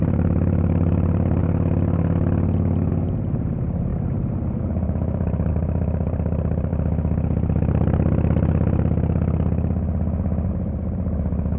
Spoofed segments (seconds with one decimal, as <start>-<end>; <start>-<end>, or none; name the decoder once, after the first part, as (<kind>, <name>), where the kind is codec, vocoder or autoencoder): 0.0-1.4 (vocoder, BigVGAN v2); 2.9-6.7; 10.5-11.6